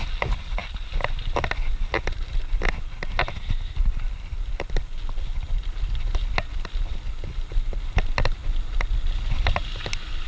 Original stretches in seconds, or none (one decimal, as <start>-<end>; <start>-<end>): 0.0-10.3